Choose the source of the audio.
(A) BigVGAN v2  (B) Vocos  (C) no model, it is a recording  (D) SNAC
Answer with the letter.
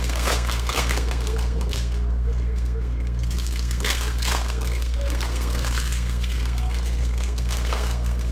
D